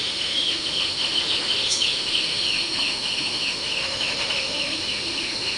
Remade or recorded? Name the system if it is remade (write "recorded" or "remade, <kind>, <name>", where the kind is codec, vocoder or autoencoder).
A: remade, autoencoder, DAC-VAE